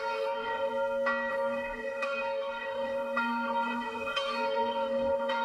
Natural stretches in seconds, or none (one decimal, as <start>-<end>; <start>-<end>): 0.7-1.3